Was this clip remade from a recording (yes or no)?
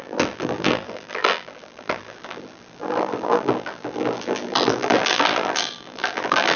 yes